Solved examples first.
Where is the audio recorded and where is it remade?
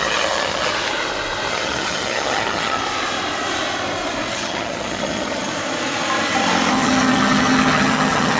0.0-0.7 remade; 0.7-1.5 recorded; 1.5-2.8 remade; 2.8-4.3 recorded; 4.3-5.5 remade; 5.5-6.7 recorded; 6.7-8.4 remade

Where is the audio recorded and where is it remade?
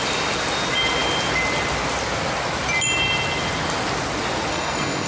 0.0-4.5 recorded; 4.5-5.1 remade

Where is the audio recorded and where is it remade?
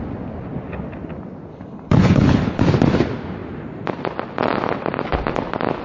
0.0-1.5 recorded; 1.5-2.6 remade; 2.6-5.8 recorded